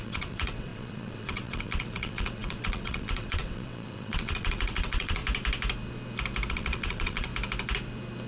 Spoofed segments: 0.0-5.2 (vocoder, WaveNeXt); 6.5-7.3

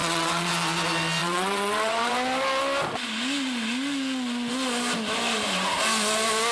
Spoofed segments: 0.0-0.5 (vocoder, WaveNeXt); 1.2-2.1

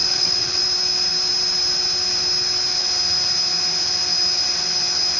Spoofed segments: 0.0-0.6 (vocoder, WaveNeXt)

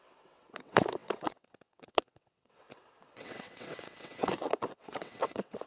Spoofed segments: 0.0-5.7 (vocoder, WaveNeXt)

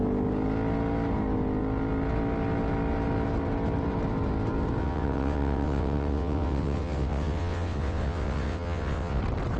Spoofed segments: 4.8-9.2 (vocoder, WaveNeXt)

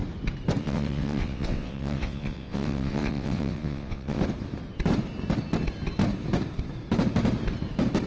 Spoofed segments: 0.6-4.2 (vocoder, WaveNeXt)